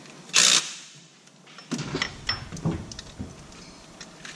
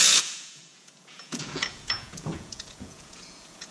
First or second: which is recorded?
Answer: first